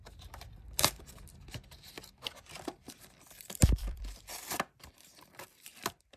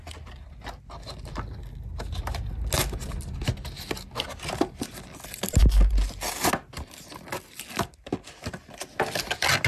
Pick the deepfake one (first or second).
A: first